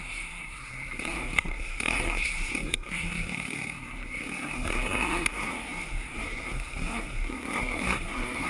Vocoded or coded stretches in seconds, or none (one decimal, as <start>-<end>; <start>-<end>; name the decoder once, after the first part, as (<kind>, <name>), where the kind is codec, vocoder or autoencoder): 0.0-8.5 (codec, SNAC)